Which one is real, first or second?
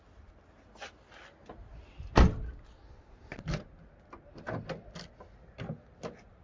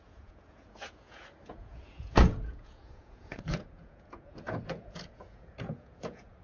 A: first